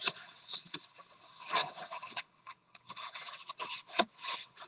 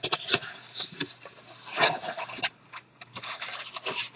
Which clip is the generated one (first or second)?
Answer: first